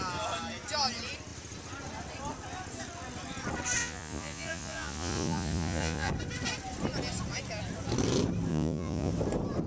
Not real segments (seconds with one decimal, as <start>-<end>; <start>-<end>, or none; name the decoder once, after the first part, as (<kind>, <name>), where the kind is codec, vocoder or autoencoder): 3.8-6.1 (vocoder, Vocos); 8.5-9.1